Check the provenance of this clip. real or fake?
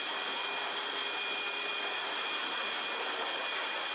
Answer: real